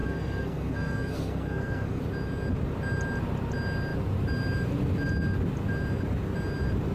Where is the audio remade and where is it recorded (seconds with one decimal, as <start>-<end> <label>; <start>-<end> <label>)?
0.0-2.0 remade; 2.0-6.9 recorded